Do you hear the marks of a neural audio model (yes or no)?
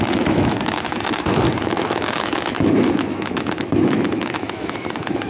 yes